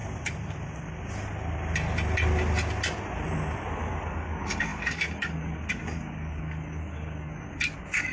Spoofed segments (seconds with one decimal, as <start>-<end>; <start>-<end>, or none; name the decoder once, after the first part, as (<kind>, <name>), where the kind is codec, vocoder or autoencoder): 3.8-8.1 (codec, DAC)